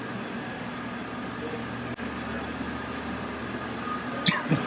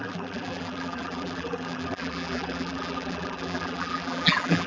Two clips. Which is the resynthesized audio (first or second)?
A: second